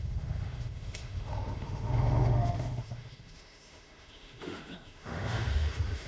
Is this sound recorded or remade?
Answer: remade